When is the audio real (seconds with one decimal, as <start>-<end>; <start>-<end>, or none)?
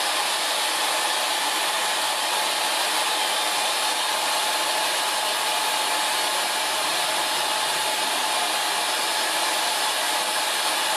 0.0-11.0